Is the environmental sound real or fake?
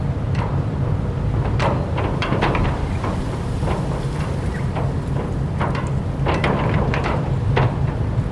real